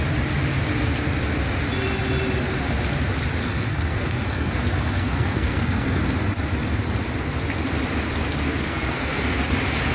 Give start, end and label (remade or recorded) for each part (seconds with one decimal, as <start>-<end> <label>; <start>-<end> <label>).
0.0-3.4 recorded; 3.4-6.0 remade; 6.0-8.5 recorded; 8.5-9.4 remade; 9.4-9.9 recorded